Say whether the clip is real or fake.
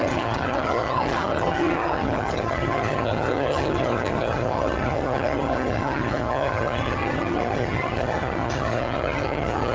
fake